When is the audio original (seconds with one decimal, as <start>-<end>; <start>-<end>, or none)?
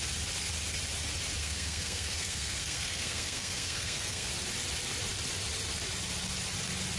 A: 0.0-1.4; 4.3-7.0